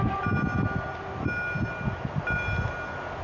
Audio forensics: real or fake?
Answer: real